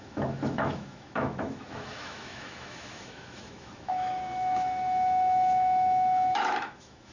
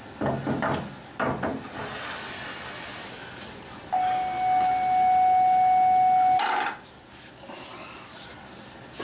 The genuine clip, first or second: second